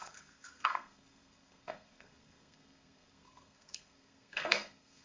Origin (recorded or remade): remade